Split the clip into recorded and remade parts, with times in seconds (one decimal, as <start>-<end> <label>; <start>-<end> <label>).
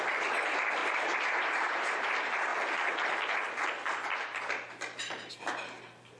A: 0.0-0.8 recorded; 0.8-2.1 remade; 2.1-6.2 recorded